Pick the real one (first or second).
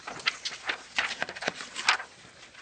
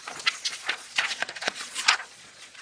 first